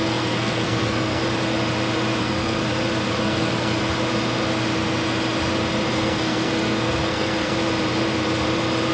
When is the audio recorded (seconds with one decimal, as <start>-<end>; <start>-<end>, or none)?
1.2-2.2; 2.6-3.1; 3.8-5.9; 7.6-8.9